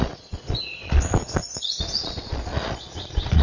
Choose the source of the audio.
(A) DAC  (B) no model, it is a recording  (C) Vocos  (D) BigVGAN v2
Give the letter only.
C